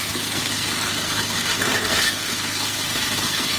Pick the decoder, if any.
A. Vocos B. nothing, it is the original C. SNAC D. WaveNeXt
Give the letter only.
C